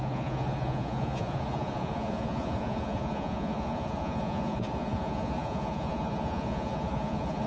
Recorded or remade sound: remade